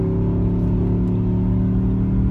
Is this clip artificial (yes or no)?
no